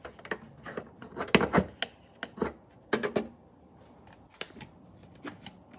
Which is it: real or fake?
real